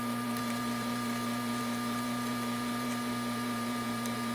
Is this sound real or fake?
fake